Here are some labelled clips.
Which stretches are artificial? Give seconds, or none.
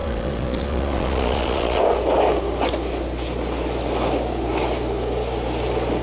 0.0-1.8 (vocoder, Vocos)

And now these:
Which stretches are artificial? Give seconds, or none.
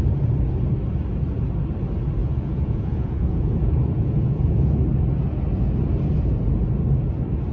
2.2-4.7 (vocoder, Vocos)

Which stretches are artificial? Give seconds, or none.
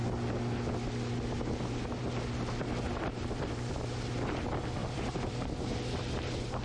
4.8-5.5 (vocoder, BigVGAN v2)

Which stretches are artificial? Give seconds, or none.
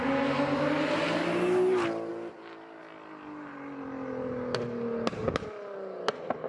none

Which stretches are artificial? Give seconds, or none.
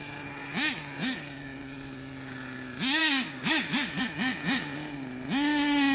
3.0-4.0 (codec, DAC)